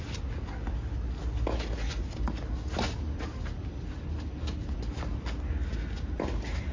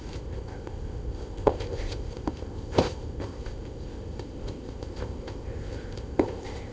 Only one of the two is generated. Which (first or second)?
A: second